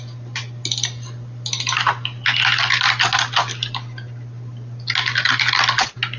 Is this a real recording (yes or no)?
yes